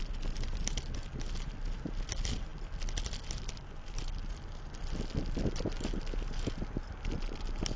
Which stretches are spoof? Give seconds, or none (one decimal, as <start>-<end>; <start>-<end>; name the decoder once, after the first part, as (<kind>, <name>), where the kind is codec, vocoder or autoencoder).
none